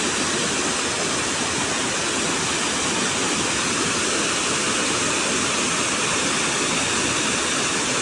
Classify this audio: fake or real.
real